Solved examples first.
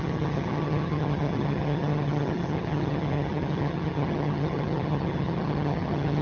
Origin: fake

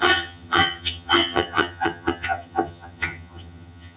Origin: fake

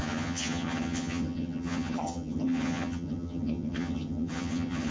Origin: fake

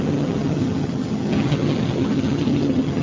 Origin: fake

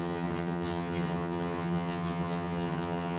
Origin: fake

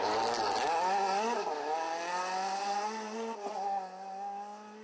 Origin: real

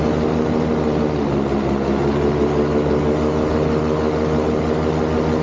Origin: real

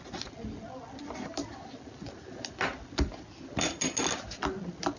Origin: real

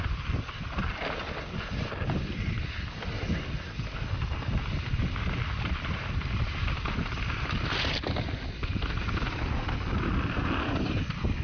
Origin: real